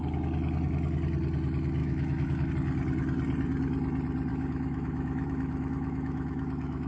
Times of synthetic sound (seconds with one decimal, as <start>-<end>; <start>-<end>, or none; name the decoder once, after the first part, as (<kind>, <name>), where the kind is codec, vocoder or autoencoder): 1.8-2.5 (autoencoder, DAC-VAE); 4.3-6.9